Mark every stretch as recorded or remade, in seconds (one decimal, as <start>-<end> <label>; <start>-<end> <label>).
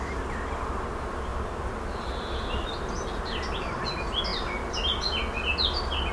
0.0-6.1 recorded